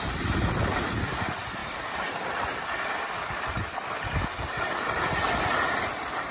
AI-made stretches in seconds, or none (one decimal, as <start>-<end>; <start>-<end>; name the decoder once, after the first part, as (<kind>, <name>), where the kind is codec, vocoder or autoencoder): 1.6-5.0 (vocoder, BigVGAN v2)